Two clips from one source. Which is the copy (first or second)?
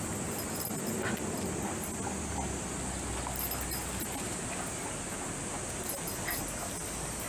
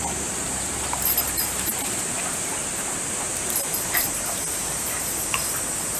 second